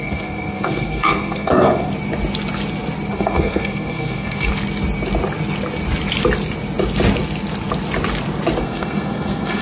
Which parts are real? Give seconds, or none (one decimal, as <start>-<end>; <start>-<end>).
1.9-3.1; 4.5-8.6